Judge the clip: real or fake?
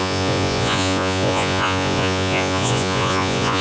fake